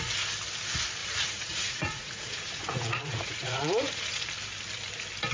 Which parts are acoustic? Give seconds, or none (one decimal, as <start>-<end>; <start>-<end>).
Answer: 0.0-1.0; 4.2-5.3